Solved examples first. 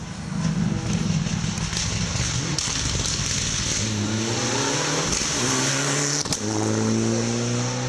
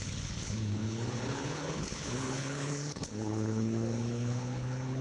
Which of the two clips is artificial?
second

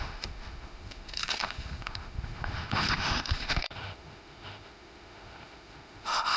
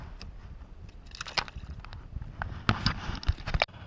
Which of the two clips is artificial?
first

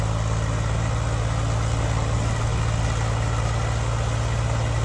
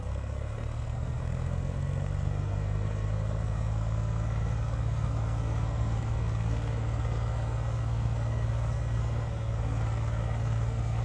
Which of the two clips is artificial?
second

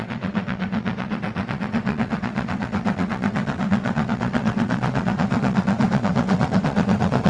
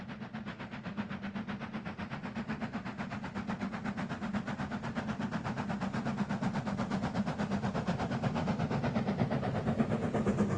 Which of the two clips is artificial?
first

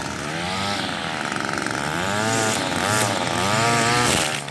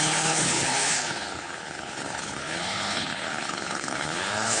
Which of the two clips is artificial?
second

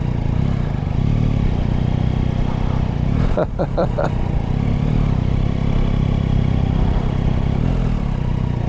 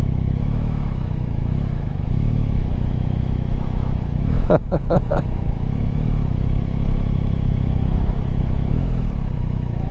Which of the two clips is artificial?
second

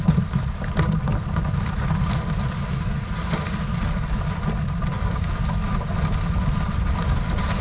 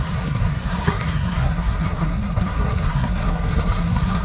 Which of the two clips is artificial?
second